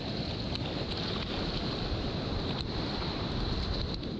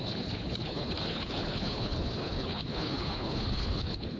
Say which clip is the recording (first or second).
first